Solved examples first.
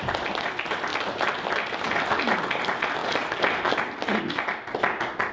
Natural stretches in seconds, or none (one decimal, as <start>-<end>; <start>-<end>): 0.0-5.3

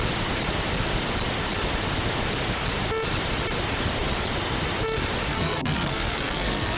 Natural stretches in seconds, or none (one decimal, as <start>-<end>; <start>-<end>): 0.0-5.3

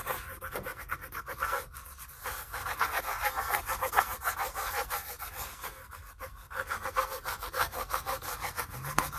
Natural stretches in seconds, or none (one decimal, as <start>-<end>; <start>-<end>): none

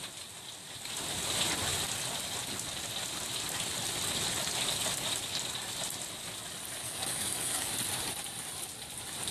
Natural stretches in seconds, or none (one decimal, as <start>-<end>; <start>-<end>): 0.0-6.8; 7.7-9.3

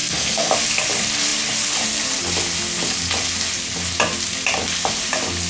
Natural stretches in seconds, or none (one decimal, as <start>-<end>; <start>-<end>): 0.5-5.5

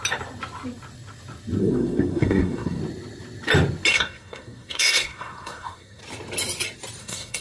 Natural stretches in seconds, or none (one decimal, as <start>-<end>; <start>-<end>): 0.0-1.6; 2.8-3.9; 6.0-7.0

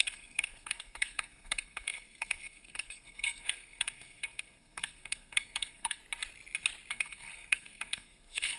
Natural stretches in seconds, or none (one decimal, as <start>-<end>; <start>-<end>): 6.0-6.9